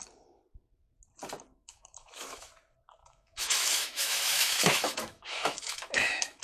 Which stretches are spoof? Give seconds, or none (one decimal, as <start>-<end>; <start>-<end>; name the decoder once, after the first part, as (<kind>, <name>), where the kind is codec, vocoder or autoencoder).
1.5-2.5 (autoencoder, DAC-VAE); 3.0-6.4